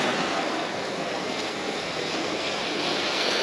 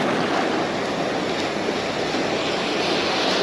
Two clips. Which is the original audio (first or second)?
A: second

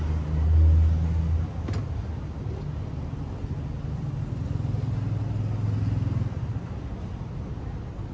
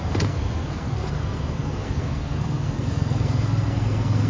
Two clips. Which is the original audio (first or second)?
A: first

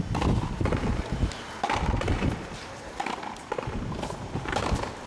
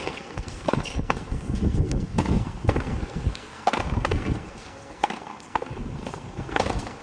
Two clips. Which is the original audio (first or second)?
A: first